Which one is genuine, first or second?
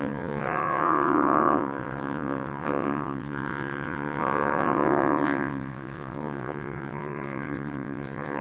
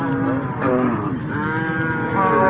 second